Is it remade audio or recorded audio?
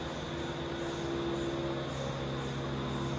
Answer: recorded